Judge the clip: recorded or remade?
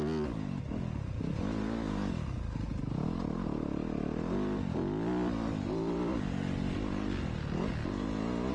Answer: recorded